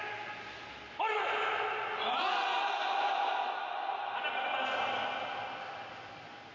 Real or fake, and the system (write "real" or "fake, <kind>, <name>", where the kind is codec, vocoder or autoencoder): real